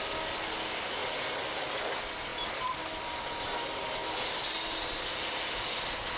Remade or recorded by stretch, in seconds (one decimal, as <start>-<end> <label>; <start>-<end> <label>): 0.0-6.2 recorded